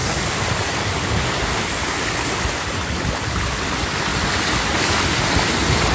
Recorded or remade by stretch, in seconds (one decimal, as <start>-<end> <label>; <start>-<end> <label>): 0.0-5.9 recorded